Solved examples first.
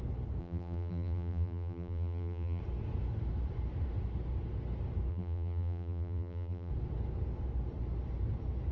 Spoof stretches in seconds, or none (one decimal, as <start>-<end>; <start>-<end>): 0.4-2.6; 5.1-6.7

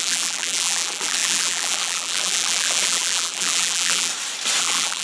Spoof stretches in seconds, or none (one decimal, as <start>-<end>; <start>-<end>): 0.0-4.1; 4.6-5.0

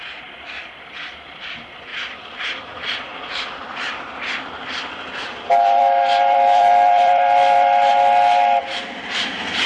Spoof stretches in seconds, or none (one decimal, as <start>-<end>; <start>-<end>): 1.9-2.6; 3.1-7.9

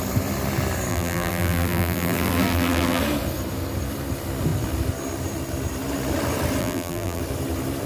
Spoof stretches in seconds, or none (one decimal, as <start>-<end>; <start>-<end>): 0.9-3.0; 6.6-7.2

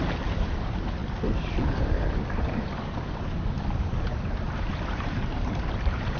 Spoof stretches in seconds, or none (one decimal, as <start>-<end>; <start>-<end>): 0.0-1.0; 1.6-6.2